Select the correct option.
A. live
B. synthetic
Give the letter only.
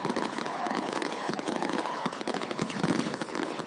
B